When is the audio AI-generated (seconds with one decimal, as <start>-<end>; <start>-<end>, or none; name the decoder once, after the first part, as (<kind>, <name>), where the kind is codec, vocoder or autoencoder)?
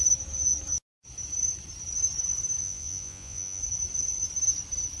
2.6-3.6 (vocoder, Vocos)